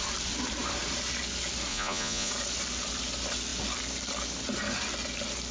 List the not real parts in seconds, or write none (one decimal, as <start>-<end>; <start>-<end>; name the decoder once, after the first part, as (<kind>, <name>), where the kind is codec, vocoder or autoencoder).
1.7-2.3 (vocoder, Vocos)